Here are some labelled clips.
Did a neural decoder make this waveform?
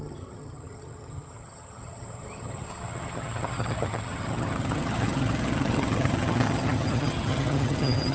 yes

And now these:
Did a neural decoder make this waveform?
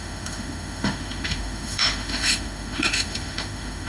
yes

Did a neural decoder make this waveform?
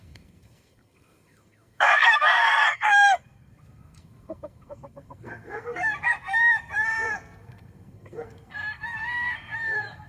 yes